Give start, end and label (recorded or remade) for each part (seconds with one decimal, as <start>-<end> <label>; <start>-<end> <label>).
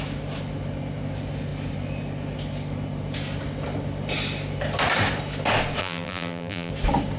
0.0-5.8 recorded; 5.8-6.7 remade; 6.7-7.2 recorded